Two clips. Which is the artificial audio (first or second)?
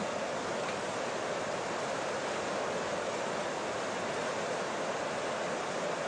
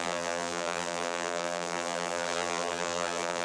second